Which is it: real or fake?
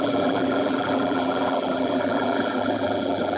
fake